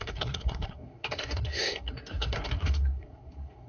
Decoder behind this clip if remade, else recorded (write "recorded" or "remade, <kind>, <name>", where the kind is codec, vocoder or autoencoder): remade, codec, SNAC